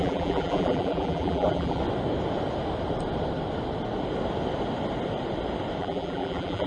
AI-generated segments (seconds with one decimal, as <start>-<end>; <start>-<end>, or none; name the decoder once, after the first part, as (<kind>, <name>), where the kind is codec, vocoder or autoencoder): 0.0-1.8 (vocoder, BigVGAN v2); 5.8-6.7